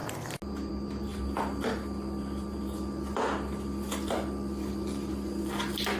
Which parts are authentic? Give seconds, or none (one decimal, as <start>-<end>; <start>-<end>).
0.0-6.0